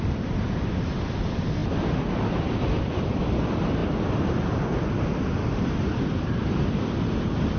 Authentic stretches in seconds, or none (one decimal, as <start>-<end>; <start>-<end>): 1.6-2.3; 3.8-6.0